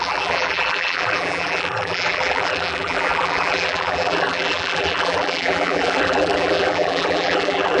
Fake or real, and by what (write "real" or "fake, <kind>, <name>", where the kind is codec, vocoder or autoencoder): fake, vocoder, BigVGAN v2